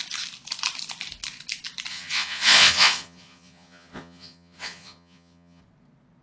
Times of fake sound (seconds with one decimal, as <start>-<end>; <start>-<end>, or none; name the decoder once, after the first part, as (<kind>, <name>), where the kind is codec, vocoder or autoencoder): 1.9-5.6 (vocoder, Vocos)